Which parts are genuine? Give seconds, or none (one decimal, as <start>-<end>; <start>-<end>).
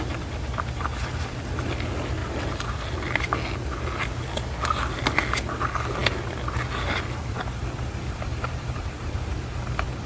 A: 0.0-2.2; 2.8-8.3; 9.1-10.1